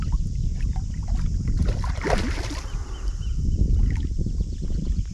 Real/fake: real